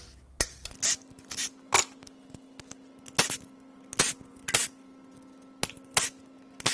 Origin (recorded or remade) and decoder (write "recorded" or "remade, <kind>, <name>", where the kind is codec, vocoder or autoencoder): recorded